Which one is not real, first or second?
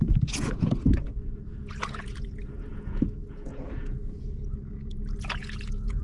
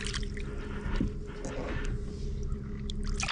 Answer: first